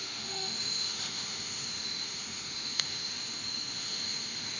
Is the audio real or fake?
fake